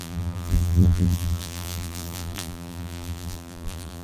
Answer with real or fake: fake